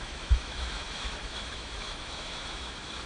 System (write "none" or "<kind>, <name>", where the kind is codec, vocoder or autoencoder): autoencoder, DAC-VAE